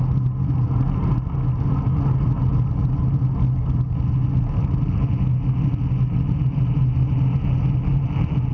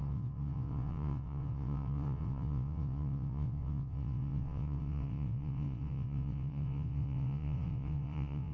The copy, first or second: second